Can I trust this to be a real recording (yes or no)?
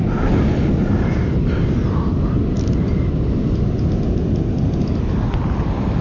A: yes